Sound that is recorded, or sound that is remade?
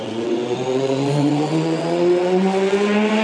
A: remade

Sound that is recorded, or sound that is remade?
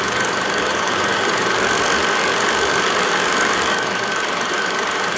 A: remade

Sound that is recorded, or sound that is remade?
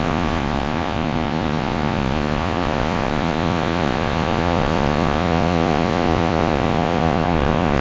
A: remade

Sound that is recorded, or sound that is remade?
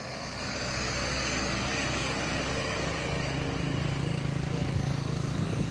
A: remade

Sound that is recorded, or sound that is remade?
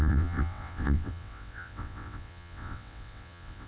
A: remade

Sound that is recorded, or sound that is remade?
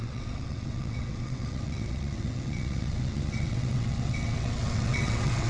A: remade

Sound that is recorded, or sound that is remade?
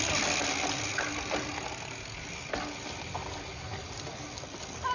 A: recorded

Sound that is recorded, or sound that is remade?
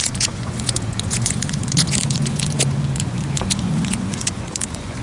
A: remade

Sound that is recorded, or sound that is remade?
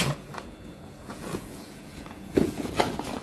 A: remade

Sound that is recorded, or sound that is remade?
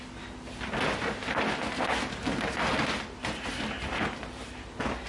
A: recorded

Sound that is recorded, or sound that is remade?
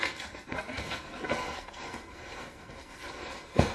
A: remade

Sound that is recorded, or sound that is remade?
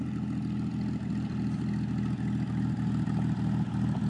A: recorded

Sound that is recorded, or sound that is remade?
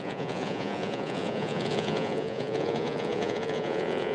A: remade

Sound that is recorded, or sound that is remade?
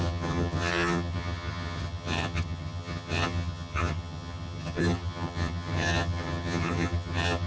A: remade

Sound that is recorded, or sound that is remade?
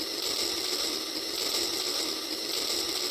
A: recorded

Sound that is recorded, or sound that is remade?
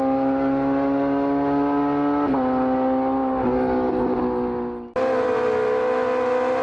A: recorded